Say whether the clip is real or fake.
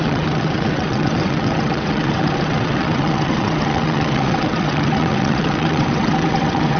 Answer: fake